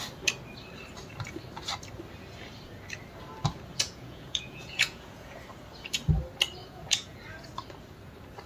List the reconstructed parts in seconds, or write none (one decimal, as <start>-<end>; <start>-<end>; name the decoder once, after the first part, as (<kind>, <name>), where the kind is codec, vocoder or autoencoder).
3.7-5.4 (vocoder, Vocos); 6.6-7.2